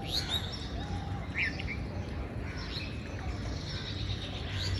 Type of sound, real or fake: real